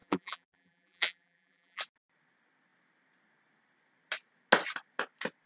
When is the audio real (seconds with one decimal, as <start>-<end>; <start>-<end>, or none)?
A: 1.8-5.5